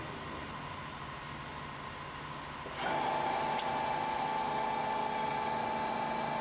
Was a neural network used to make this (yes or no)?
no